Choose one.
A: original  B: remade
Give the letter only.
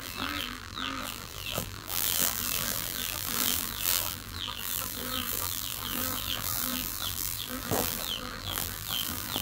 B